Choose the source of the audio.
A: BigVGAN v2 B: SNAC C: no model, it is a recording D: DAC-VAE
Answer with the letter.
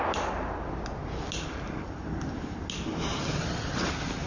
C